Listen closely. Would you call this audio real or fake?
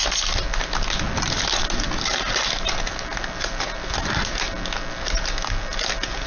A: real